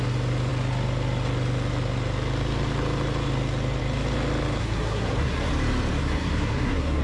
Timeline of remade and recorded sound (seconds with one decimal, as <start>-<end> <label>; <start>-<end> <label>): 0.0-4.6 recorded; 4.6-5.5 remade; 5.5-6.0 recorded; 6.0-7.0 remade